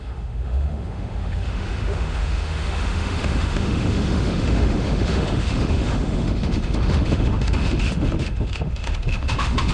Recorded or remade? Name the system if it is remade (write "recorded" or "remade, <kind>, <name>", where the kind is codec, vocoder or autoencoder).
remade, autoencoder, DAC-VAE